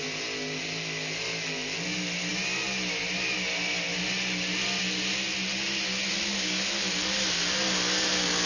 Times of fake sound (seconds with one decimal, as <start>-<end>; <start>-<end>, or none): none